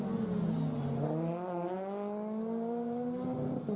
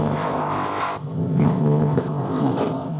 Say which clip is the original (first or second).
first